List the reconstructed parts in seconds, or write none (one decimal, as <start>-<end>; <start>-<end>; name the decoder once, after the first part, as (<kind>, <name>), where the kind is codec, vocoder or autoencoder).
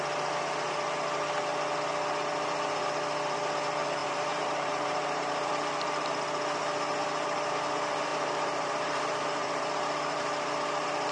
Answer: 4.0-5.5 (vocoder, BigVGAN v2); 8.1-10.2